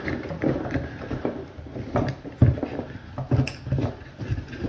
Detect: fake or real real